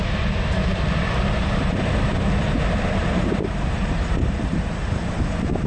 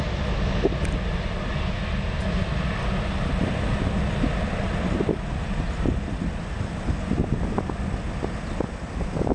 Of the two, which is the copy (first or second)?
first